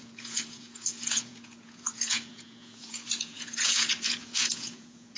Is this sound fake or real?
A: fake